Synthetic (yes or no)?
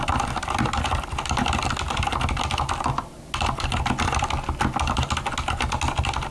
no